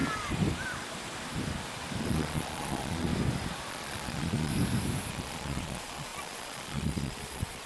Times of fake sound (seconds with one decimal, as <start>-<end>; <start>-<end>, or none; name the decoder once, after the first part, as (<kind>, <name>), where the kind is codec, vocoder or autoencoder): 2.0-3.1 (vocoder, Vocos); 3.7-4.5; 5.1-7.7